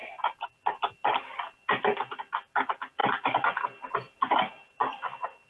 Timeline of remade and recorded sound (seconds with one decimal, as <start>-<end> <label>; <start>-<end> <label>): 0.0-5.5 recorded